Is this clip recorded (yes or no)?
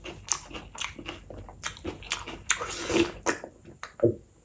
yes